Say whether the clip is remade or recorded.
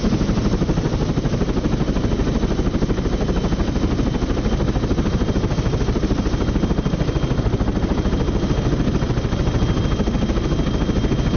recorded